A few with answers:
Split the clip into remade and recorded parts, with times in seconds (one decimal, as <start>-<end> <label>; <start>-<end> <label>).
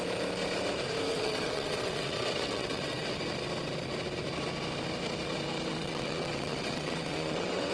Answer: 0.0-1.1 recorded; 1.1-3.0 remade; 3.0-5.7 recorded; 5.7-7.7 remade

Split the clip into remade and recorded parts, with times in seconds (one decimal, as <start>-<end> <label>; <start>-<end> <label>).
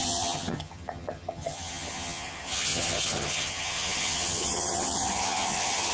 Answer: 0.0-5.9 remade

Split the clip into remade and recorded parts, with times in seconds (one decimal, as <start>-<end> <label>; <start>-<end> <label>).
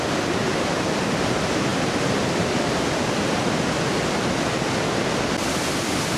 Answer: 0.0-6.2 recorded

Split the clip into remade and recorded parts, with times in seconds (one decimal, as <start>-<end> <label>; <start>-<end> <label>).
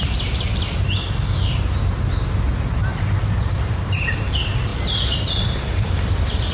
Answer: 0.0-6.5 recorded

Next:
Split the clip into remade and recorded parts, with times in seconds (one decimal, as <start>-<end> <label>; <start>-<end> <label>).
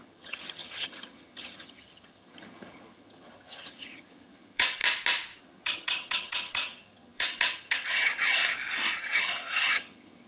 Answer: 0.0-4.8 remade; 4.8-5.4 recorded; 5.4-8.4 remade; 8.4-9.0 recorded; 9.0-10.3 remade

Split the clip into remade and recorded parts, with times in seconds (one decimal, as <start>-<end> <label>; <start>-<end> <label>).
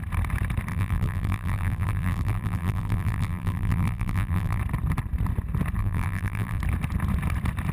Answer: 0.0-0.7 recorded; 0.7-4.6 remade; 4.6-5.8 recorded; 5.8-6.6 remade; 6.6-7.7 recorded